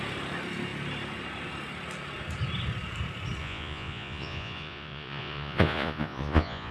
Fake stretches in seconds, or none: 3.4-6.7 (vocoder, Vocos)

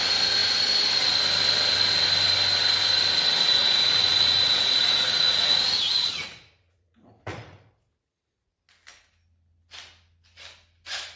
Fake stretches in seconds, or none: 3.6-8.5 (vocoder, Vocos)

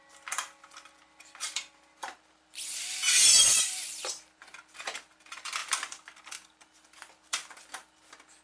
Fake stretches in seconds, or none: 0.0-8.4 (vocoder, BigVGAN v2)

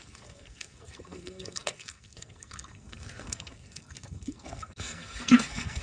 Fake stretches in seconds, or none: 0.0-5.8 (codec, SNAC)